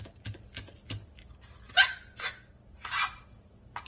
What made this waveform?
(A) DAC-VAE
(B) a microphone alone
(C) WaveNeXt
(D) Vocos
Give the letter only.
B